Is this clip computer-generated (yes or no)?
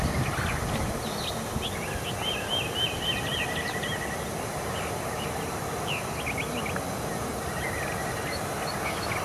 no